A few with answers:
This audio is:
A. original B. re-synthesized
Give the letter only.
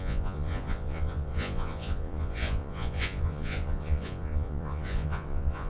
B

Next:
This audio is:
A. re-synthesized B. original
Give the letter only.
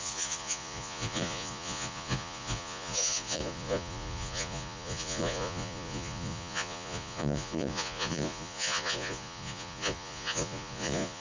A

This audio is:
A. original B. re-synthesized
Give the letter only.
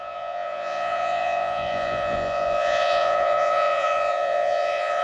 B